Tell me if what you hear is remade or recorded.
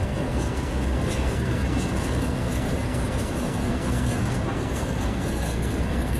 remade